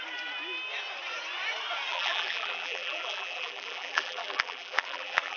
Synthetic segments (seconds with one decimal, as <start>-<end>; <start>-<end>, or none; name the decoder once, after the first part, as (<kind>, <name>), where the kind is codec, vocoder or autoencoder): 1.9-5.4 (vocoder, BigVGAN v2)